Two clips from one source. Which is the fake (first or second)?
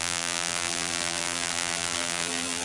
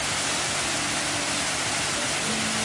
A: first